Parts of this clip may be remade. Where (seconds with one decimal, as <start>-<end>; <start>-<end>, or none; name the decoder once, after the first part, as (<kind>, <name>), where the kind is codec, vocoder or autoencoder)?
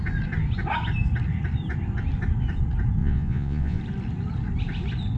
3.0-3.8 (vocoder, Vocos)